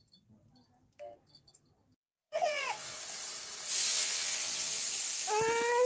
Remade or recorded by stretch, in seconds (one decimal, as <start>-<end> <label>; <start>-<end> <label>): 0.0-2.0 recorded; 2.0-3.0 remade; 3.0-3.9 recorded; 3.9-4.8 remade; 4.8-5.9 recorded